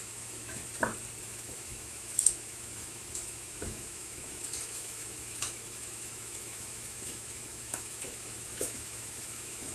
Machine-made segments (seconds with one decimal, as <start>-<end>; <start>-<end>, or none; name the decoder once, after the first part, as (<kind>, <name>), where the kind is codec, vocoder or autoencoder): 0.0-0.6 (autoencoder, DAC-VAE); 1.2-9.7